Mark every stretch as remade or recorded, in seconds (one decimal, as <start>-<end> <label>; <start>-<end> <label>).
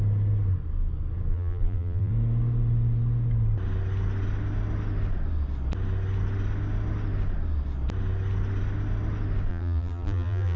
0.0-1.3 recorded; 1.3-2.1 remade; 2.1-9.5 recorded; 9.5-10.6 remade